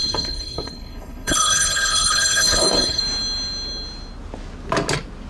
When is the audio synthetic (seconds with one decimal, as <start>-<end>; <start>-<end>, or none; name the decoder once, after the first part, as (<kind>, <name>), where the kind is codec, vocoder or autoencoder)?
0.0-3.0 (codec, HILCodec)